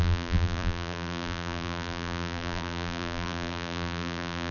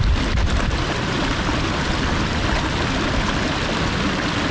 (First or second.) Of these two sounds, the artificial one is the first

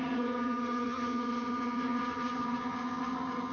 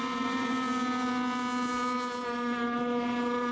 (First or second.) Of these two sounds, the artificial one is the first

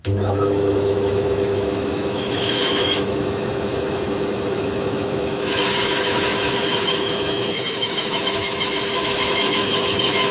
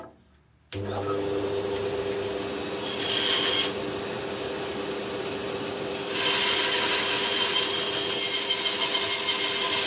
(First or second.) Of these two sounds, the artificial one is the first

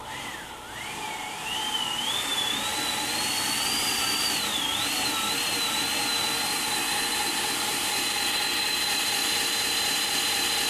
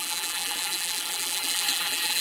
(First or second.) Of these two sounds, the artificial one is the second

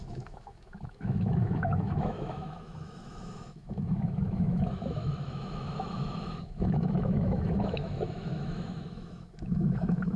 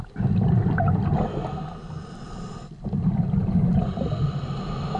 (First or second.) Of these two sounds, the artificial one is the first